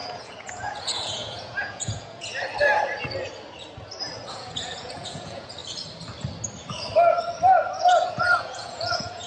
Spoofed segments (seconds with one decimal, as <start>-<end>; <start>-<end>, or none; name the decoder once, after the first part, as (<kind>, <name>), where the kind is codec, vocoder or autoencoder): 0.0-2.3 (vocoder, Vocos); 4.3-5.6; 7.8-9.3